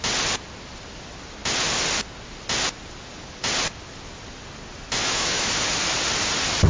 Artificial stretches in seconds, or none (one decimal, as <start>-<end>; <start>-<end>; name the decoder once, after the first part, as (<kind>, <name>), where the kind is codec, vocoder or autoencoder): 5.0-5.6 (autoencoder, DAC-VAE)